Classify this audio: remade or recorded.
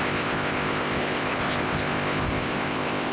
remade